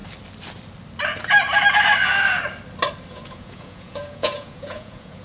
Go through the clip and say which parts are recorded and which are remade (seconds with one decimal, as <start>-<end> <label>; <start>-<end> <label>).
0.0-3.1 recorded; 3.1-5.2 remade